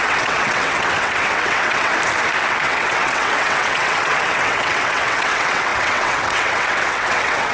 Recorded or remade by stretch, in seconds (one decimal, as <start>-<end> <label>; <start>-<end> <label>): 0.0-1.9 remade; 1.9-2.5 recorded; 2.5-7.5 remade